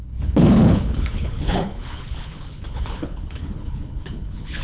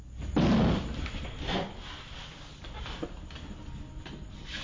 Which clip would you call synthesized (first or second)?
first